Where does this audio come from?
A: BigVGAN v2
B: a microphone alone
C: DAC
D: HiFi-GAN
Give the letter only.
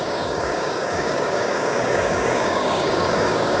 C